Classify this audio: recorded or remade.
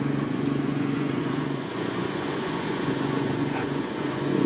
remade